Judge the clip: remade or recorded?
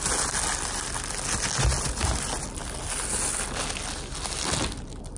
recorded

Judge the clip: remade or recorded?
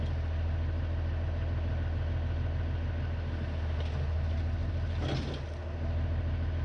recorded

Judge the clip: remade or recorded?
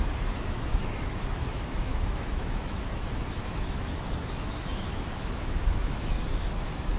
remade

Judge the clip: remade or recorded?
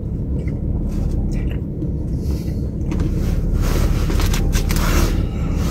recorded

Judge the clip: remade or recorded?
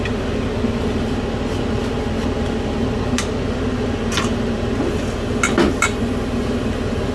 recorded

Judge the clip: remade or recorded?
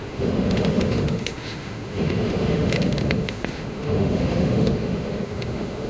remade